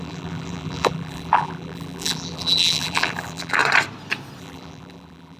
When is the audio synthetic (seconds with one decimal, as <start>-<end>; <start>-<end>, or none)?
0.0-3.6; 4.4-5.4